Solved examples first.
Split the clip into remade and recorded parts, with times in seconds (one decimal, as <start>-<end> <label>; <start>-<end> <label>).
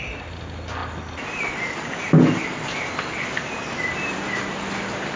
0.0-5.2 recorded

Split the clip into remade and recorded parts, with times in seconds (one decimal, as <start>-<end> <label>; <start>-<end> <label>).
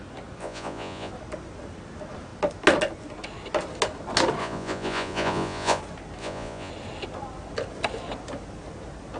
0.0-0.4 recorded; 0.4-1.1 remade; 1.1-4.4 recorded; 4.4-5.8 remade; 5.8-6.2 recorded; 6.2-6.7 remade; 6.7-9.2 recorded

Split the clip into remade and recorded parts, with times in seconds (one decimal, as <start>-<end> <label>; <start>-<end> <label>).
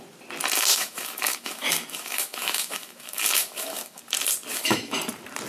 0.0-0.7 recorded; 0.7-4.0 remade; 4.0-4.5 recorded; 4.5-5.0 remade; 5.0-5.5 recorded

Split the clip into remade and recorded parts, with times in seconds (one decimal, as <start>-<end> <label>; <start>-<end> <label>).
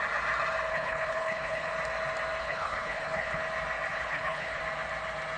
0.0-0.7 recorded; 0.7-1.7 remade; 1.7-2.4 recorded; 2.4-3.4 remade; 3.4-3.9 recorded; 3.9-4.6 remade; 4.6-5.4 recorded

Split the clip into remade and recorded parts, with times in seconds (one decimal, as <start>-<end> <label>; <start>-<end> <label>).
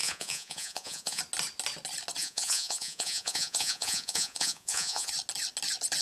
0.0-1.2 remade; 1.2-2.2 recorded; 2.2-5.1 remade; 5.1-6.0 recorded